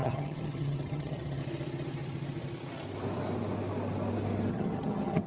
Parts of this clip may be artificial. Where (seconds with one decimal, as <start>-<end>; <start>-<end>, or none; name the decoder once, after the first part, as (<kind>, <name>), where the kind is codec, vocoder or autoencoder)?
0.0-1.4 (vocoder, HiFi-GAN); 4.5-5.3